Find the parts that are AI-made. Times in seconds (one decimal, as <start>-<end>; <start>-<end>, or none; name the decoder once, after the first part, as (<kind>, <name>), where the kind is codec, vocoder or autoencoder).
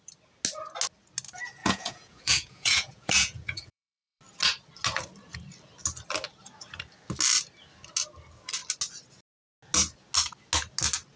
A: 1.6-4.2 (vocoder, Vocos)